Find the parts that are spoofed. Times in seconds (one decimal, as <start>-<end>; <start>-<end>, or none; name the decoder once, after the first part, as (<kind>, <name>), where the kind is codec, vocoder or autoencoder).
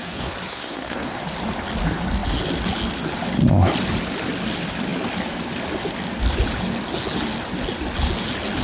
0.5-1.2 (codec, SNAC)